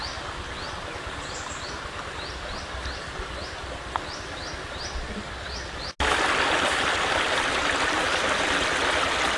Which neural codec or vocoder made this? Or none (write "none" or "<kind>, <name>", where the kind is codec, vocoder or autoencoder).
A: none